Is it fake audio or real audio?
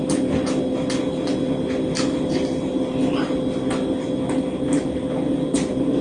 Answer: real